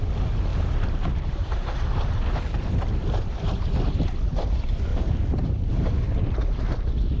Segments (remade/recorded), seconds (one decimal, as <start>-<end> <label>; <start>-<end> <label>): 0.0-0.5 recorded; 0.5-2.2 remade; 2.2-4.9 recorded; 4.9-5.7 remade; 5.7-7.2 recorded